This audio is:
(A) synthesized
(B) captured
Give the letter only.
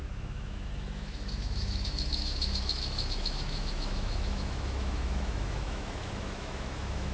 A